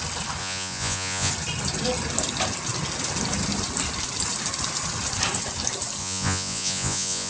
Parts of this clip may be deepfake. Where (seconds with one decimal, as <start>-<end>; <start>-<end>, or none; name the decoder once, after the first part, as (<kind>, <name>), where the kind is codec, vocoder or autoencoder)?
0.4-1.3 (vocoder, Vocos); 6.0-7.3